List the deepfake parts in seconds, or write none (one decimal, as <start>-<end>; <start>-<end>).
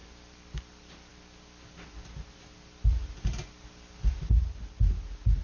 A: none